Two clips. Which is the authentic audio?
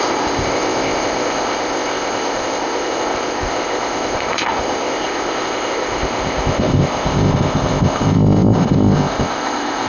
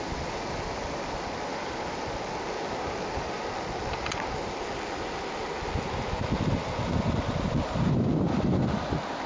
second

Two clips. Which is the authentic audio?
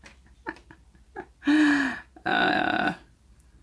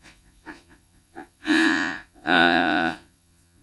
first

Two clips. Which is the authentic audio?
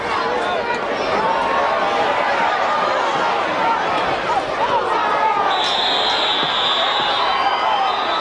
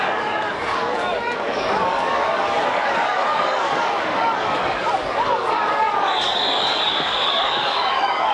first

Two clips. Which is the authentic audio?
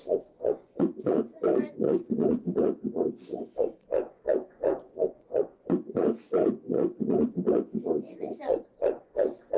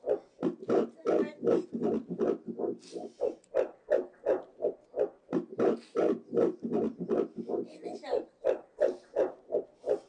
second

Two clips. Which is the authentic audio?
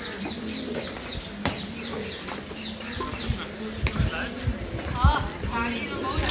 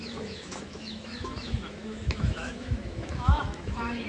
first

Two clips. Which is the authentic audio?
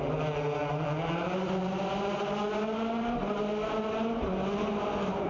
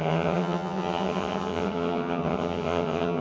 first